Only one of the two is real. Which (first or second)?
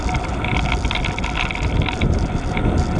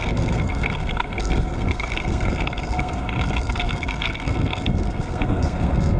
first